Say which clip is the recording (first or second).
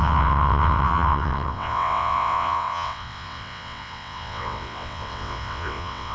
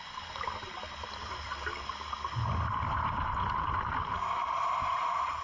second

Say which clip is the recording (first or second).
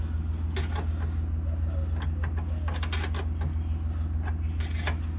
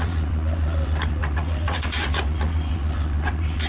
first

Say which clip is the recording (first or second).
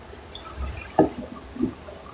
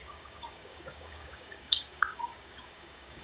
first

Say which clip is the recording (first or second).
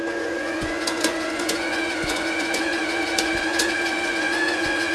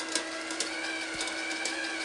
second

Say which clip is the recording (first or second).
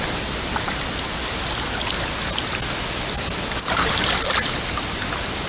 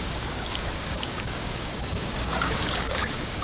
first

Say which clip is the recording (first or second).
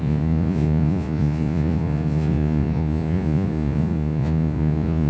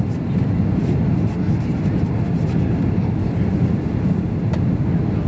second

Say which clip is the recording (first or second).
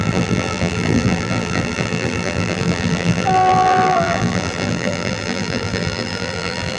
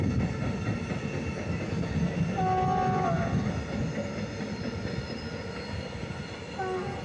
second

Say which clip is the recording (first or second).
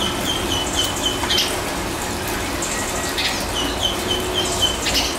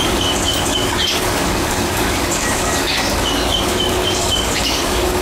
first